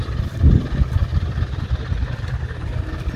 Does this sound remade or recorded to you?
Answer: recorded